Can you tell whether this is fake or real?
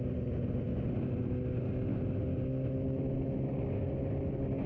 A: real